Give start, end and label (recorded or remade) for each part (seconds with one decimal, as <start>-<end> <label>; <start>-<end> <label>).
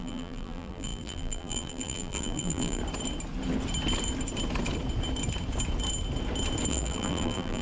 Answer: 0.0-2.8 remade; 2.8-6.7 recorded; 6.7-7.6 remade